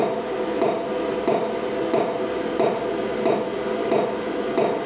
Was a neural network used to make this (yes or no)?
no